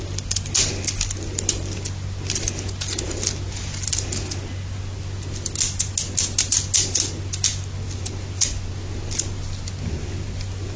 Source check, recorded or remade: recorded